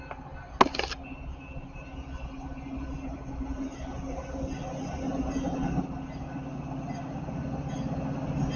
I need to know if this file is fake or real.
real